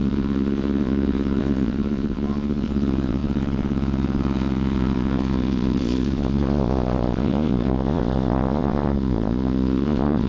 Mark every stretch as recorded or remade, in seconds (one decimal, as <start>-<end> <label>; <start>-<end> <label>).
0.0-10.3 remade

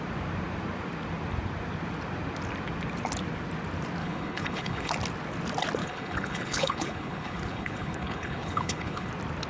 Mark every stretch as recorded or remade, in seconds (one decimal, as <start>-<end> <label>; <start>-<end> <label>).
0.0-4.0 recorded; 4.0-4.9 remade; 4.9-5.8 recorded; 5.8-9.1 remade; 9.1-9.5 recorded

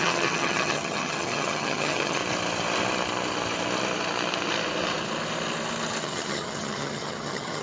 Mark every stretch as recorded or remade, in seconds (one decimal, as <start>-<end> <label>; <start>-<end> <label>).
0.0-2.2 remade; 2.2-6.0 recorded; 6.0-7.6 remade

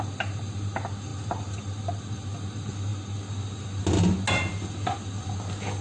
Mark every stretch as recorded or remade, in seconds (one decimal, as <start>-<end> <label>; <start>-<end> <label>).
0.0-5.8 recorded

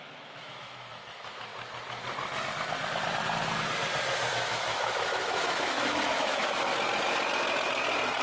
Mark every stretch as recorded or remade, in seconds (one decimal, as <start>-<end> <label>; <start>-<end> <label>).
0.0-1.5 remade; 1.5-4.3 recorded; 4.3-6.7 remade; 6.7-8.2 recorded

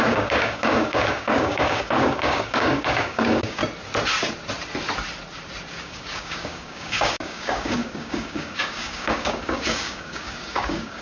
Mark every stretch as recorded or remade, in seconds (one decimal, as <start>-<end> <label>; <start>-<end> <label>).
0.0-3.6 remade; 3.6-5.8 recorded; 5.8-11.0 remade

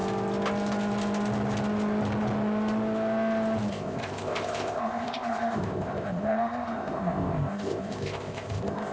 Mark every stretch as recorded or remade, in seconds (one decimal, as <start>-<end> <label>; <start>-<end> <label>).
0.0-3.7 recorded; 3.7-8.9 remade